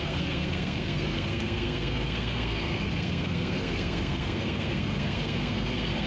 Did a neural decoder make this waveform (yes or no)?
yes